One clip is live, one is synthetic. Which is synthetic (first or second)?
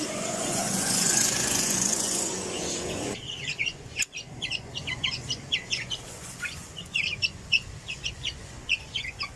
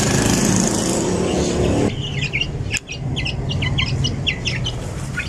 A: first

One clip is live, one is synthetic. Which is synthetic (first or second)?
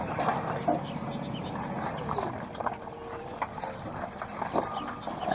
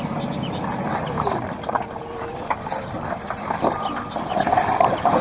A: second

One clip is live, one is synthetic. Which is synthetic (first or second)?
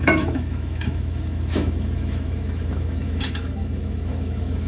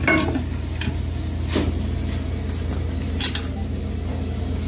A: first